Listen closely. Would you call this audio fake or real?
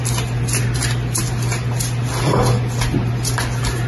real